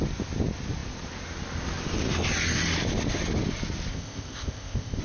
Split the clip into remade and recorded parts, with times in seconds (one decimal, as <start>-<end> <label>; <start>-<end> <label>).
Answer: 0.0-3.9 recorded; 3.9-5.0 remade